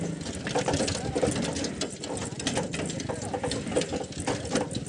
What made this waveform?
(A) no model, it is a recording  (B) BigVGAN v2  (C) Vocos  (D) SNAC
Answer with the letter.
A